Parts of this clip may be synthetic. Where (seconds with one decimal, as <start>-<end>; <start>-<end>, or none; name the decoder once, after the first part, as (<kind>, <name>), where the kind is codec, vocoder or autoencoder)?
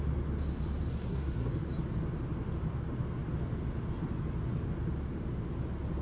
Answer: 0.9-1.5 (codec, SNAC)